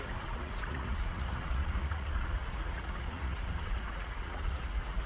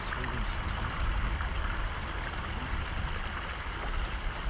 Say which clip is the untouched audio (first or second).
second